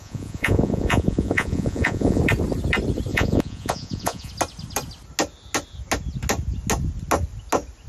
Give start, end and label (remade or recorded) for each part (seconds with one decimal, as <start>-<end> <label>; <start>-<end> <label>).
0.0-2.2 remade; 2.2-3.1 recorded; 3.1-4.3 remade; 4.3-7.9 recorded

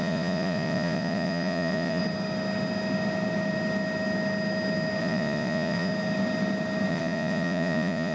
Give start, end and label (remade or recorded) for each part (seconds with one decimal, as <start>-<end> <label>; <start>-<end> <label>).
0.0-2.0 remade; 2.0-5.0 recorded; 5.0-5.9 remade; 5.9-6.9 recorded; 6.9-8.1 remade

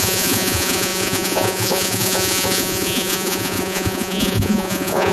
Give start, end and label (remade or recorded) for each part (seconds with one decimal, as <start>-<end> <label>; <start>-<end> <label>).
0.0-5.1 remade

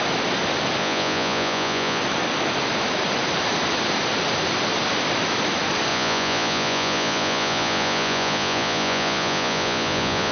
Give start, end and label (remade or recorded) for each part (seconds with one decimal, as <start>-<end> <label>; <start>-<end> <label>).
0.0-0.8 recorded; 0.8-2.0 remade; 2.0-5.9 recorded; 5.9-10.3 remade